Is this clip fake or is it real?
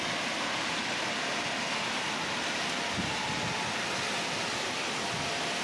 real